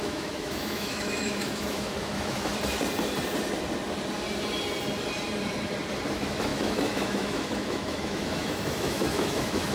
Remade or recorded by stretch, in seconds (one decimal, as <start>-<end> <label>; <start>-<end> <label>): 0.0-2.5 remade; 2.5-6.1 recorded; 6.1-9.7 remade